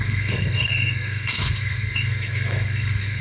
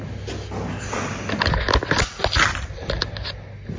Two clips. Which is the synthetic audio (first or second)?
first